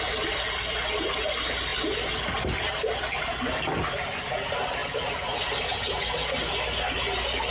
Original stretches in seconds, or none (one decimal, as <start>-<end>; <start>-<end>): 0.0-7.5